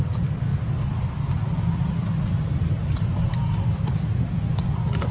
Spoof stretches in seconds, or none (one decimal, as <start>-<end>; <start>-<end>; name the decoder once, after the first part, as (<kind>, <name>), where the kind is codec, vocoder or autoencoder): none